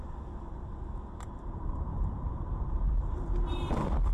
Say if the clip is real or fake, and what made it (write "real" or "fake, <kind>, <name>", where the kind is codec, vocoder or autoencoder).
fake, vocoder, BigVGAN v2